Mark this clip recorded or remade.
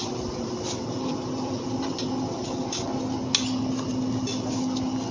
recorded